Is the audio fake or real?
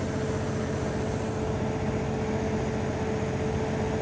real